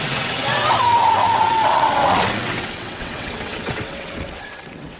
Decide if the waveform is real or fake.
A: fake